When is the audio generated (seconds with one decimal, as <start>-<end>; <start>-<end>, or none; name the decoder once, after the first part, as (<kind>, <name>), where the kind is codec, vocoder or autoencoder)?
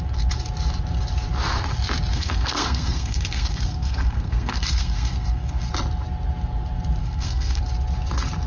2.1-5.7 (codec, SNAC); 7.0-7.6